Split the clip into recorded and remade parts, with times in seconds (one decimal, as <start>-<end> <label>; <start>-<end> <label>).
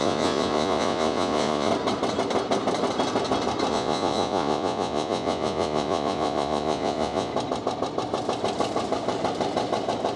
0.0-1.7 remade; 1.7-3.7 recorded; 3.7-7.3 remade; 7.3-10.2 recorded